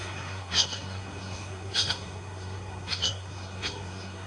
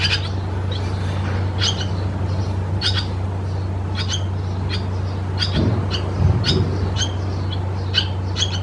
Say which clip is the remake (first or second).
first